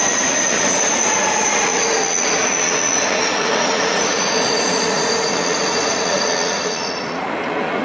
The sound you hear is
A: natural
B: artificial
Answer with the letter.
B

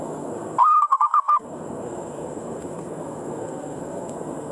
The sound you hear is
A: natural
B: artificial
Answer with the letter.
B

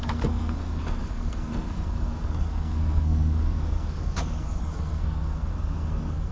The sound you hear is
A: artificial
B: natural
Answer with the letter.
A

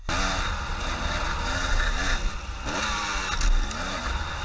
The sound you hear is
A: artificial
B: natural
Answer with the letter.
B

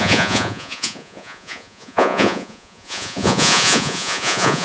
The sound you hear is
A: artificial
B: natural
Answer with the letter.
A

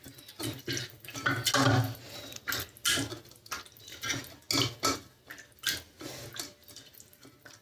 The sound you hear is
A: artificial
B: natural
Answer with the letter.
B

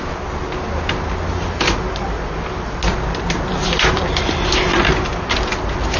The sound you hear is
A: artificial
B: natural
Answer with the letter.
B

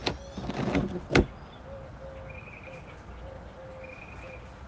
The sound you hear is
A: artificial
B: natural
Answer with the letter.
B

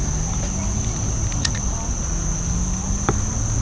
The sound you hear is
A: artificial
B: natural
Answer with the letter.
B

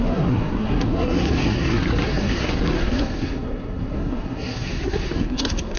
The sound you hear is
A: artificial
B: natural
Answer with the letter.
A